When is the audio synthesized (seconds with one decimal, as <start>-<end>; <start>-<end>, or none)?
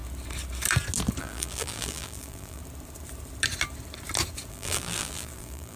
1.2-2.6; 4.5-5.8